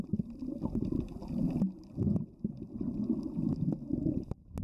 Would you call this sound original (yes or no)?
yes